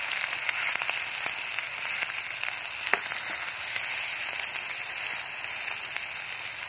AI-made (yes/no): no